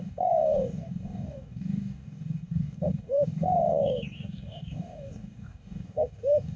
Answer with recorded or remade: remade